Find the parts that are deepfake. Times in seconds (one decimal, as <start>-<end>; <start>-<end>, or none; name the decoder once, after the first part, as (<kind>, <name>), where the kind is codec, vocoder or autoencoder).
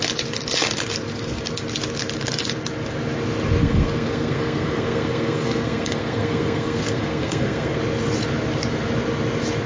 3.6-7.8 (codec, SNAC)